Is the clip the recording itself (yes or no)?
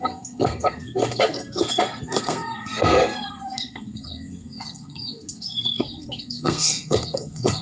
no